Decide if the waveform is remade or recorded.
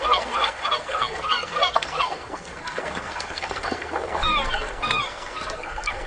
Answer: remade